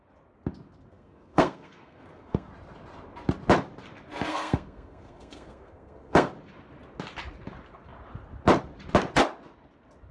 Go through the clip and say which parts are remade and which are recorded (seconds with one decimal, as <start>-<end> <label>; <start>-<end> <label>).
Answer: 0.0-0.9 recorded; 0.9-2.5 remade; 2.5-4.3 recorded; 4.3-6.3 remade; 6.3-10.1 recorded